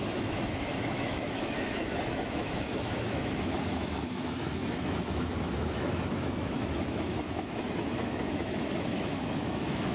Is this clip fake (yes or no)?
yes